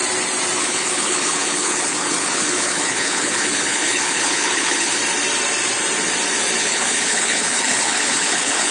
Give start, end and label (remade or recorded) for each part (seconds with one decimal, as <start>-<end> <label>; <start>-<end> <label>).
0.0-0.6 recorded; 0.6-5.0 remade; 5.0-6.6 recorded; 6.6-8.7 remade